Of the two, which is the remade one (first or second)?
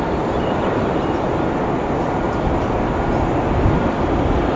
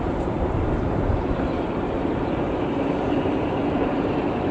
second